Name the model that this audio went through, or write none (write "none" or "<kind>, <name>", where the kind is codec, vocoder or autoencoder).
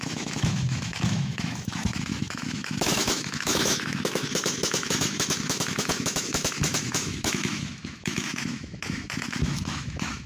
autoencoder, DAC-VAE